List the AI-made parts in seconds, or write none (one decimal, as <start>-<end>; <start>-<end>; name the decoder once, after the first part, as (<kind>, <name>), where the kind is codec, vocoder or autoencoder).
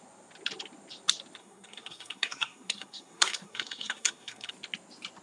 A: 1.4-4.5 (codec, SNAC)